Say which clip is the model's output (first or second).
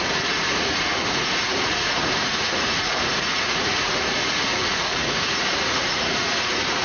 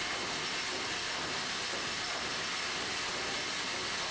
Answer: first